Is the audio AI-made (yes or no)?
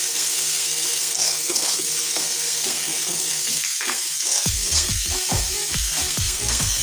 yes